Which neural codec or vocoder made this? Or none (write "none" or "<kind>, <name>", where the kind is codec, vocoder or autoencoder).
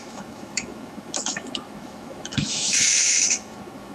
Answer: autoencoder, DAC-VAE